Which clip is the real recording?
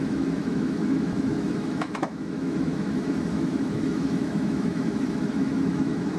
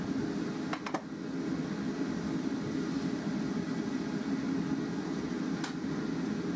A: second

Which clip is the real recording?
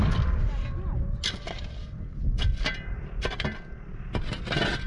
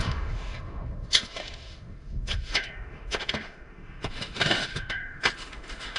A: first